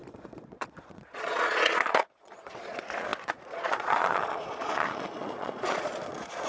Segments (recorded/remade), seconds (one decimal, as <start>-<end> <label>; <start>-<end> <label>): 0.0-6.5 remade

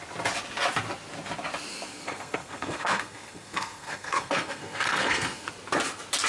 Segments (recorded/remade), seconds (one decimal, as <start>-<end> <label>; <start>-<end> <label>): 0.0-1.7 recorded; 1.7-5.5 remade; 5.5-6.3 recorded

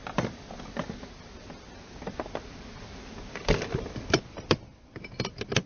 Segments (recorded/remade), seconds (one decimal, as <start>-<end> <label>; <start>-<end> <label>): 0.0-5.7 recorded

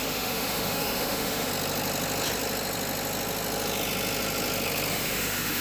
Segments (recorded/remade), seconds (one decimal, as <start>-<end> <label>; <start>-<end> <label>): 0.0-1.5 remade; 1.5-4.9 recorded; 4.9-5.6 remade

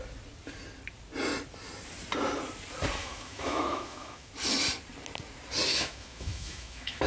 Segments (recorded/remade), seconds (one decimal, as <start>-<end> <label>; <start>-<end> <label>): 0.0-3.0 recorded; 3.0-4.3 remade; 4.3-5.7 recorded; 5.7-7.1 remade